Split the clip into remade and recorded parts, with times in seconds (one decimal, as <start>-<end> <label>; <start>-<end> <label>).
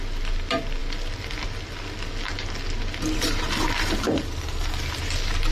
0.0-5.5 recorded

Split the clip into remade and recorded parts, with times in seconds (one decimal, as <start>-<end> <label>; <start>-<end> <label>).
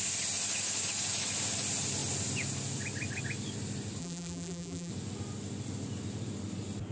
0.0-4.0 recorded; 4.0-4.9 remade; 4.9-6.9 recorded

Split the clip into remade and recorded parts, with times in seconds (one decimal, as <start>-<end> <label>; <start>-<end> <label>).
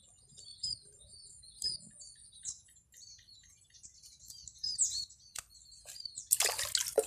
0.0-0.5 recorded; 0.5-1.5 remade; 1.5-2.2 recorded; 2.2-5.3 remade; 5.3-7.1 recorded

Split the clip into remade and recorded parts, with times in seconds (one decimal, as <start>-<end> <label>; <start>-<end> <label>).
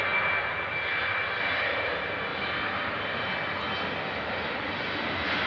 0.0-2.3 recorded; 2.3-3.0 remade; 3.0-5.5 recorded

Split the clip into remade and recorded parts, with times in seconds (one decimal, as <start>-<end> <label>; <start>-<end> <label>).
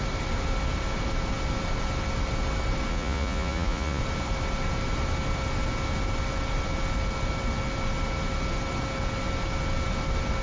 0.0-2.9 recorded; 2.9-4.0 remade; 4.0-10.4 recorded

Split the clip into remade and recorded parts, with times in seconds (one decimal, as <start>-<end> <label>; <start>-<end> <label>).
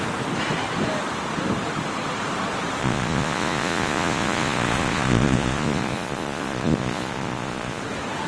0.0-2.8 recorded; 2.8-7.8 remade; 7.8-8.3 recorded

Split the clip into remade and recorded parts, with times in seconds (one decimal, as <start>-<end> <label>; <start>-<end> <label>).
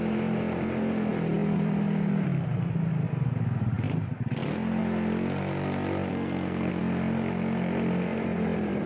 0.0-6.1 recorded; 6.1-6.7 remade; 6.7-8.9 recorded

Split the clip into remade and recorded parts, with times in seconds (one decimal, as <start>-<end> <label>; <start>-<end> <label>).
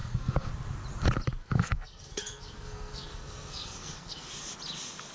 0.0-0.5 remade; 0.5-1.4 recorded; 1.4-4.3 remade; 4.3-5.1 recorded